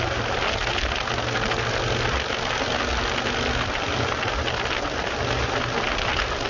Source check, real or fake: real